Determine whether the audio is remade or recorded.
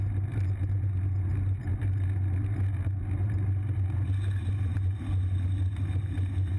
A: recorded